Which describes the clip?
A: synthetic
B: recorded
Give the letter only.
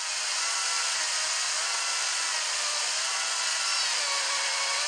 B